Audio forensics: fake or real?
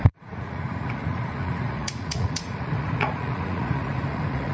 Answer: fake